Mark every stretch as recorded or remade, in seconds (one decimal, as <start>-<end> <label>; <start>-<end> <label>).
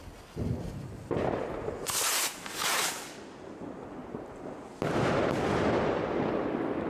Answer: 0.0-6.9 recorded